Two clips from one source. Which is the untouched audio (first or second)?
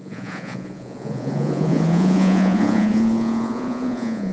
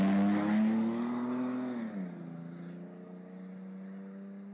second